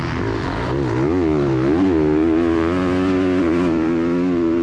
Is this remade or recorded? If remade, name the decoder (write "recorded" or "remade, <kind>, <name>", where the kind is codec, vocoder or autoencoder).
recorded